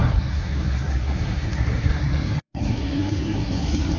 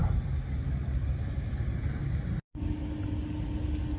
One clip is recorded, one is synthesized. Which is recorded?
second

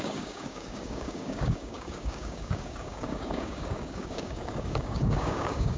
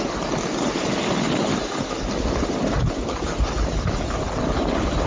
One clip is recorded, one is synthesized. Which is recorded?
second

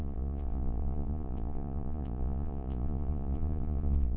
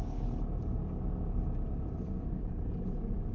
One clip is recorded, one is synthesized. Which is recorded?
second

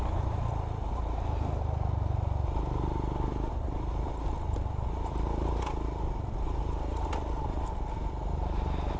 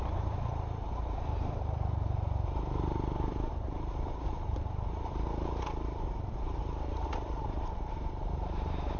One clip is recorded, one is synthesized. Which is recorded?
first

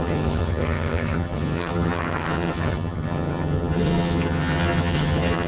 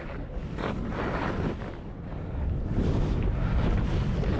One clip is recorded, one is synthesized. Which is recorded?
second